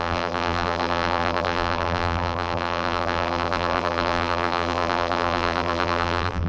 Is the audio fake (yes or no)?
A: yes